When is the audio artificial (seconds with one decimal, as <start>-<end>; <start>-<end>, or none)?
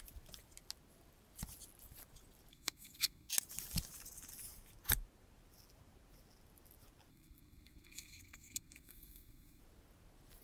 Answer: 2.5-3.3; 7.1-9.6